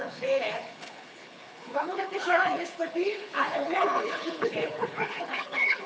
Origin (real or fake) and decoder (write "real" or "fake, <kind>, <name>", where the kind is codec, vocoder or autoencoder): fake, codec, HILCodec